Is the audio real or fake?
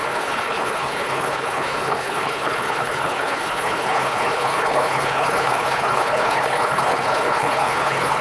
fake